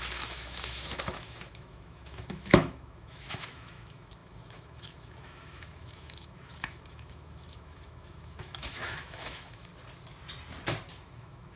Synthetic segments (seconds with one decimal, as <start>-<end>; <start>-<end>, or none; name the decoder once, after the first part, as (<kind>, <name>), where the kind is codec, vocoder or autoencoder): 0.0-9.7 (autoencoder, DAC-VAE); 10.9-11.6